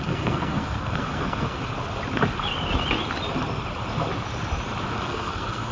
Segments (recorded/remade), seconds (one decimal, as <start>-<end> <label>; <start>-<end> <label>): 0.0-1.6 remade; 1.6-5.0 recorded; 5.0-5.7 remade